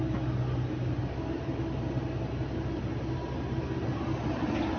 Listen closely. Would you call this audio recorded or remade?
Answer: recorded